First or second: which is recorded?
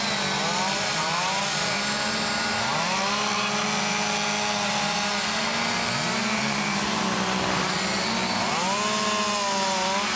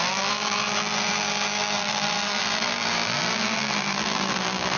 first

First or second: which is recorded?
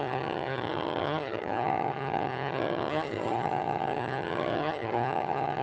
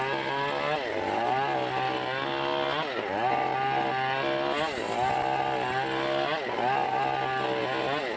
second